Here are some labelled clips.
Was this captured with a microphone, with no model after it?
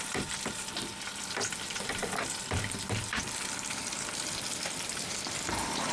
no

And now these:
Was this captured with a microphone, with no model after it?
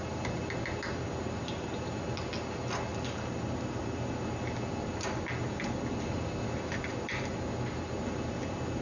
yes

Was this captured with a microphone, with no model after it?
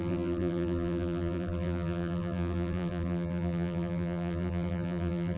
no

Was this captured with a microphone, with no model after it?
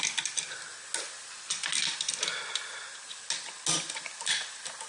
yes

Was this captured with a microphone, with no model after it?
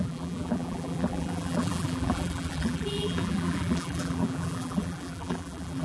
no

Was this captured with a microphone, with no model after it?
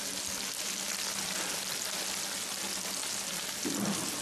yes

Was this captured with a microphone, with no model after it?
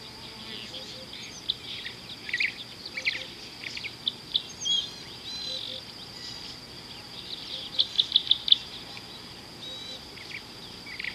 yes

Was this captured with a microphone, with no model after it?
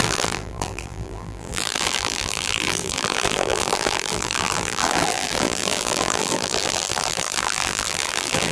no